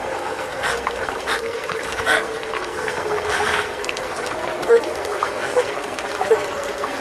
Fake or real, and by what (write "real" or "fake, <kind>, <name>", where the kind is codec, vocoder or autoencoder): fake, codec, SNAC